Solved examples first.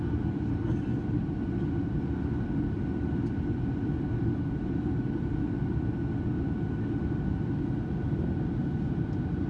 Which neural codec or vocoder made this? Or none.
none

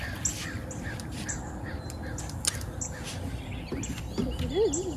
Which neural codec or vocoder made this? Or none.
none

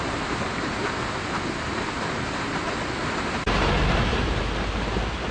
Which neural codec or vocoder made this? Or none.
none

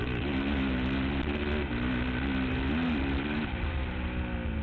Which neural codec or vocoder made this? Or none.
none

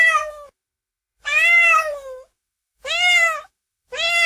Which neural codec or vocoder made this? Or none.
autoencoder, DAC-VAE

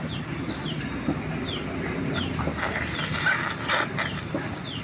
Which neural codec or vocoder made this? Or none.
none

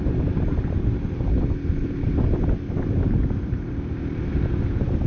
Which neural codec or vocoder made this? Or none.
none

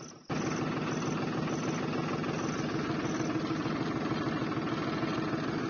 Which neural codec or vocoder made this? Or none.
none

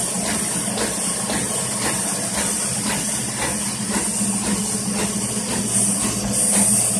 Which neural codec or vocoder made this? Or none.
none